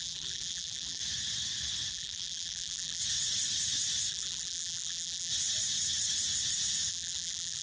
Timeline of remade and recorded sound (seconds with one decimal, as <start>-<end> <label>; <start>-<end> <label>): 0.0-1.0 remade; 1.0-1.9 recorded; 1.9-3.0 remade; 3.0-4.1 recorded; 4.1-5.3 remade; 5.3-6.9 recorded; 6.9-7.6 remade